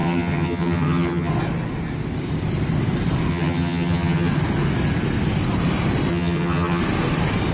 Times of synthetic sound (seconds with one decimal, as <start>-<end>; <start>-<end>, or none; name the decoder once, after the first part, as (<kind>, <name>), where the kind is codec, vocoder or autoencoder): 0.0-1.3 (vocoder, HiFi-GAN); 3.3-4.3; 6.1-6.8